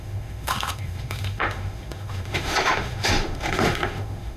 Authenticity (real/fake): fake